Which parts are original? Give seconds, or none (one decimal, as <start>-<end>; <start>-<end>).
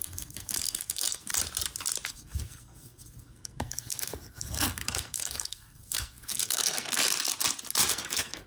1.3-2.1; 7.0-7.9